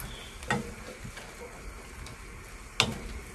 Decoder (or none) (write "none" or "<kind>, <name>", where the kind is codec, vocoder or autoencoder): none